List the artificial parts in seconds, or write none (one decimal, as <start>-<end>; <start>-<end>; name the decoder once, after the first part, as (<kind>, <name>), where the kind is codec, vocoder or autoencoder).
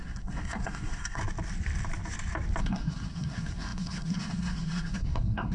0.0-1.2 (codec, SNAC); 2.6-5.5